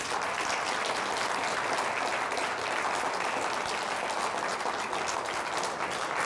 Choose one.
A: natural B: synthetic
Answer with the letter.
A